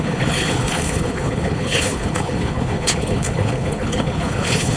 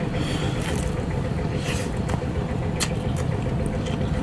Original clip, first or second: second